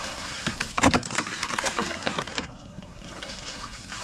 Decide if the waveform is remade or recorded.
remade